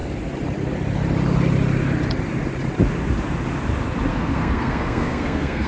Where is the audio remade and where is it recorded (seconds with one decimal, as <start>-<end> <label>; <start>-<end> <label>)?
0.0-4.1 recorded; 4.1-5.7 remade